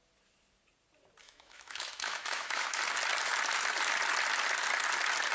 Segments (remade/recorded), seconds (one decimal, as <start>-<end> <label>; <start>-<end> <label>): 0.0-1.2 recorded; 1.2-2.8 remade; 2.8-5.3 recorded

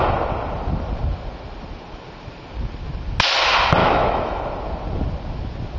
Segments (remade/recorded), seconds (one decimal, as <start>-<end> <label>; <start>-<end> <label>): 0.0-3.8 recorded; 3.8-4.4 remade; 4.4-5.8 recorded

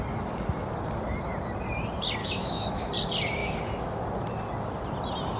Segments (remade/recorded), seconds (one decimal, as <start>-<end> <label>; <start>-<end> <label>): 0.0-2.2 recorded; 2.2-2.9 remade; 2.9-3.4 recorded; 3.4-4.0 remade; 4.0-5.4 recorded

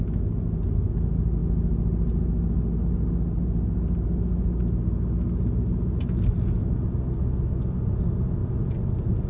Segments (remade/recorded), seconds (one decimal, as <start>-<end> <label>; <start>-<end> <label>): 0.0-9.3 recorded

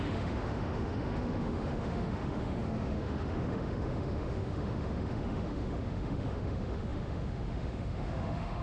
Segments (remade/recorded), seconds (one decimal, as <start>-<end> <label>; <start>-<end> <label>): 0.0-8.6 remade

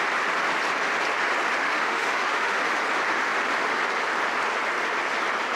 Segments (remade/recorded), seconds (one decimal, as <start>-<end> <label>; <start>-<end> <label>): 0.0-1.6 recorded; 1.6-2.7 remade; 2.7-5.6 recorded

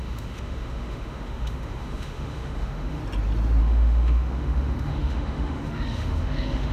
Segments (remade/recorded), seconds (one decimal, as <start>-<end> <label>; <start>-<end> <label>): 0.0-3.0 remade; 3.0-3.6 recorded; 3.6-6.7 remade